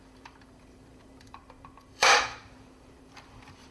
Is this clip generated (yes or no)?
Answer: yes